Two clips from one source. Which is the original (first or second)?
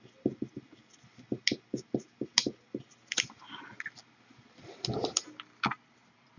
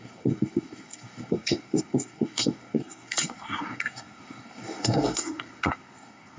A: first